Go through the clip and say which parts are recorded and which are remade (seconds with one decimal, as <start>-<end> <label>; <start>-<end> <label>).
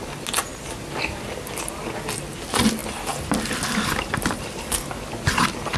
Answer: 0.0-0.5 recorded; 0.5-1.9 remade; 1.9-2.8 recorded; 2.8-5.1 remade; 5.1-5.8 recorded